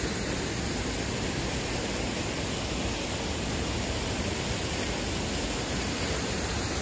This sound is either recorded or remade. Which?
recorded